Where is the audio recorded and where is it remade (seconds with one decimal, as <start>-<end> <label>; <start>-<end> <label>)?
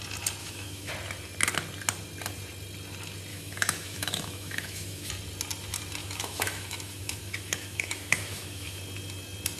0.0-0.4 recorded; 0.4-0.9 remade; 0.9-3.3 recorded; 3.3-5.1 remade; 5.1-6.0 recorded; 6.0-8.8 remade; 8.8-9.6 recorded